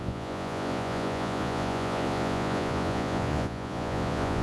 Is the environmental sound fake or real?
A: fake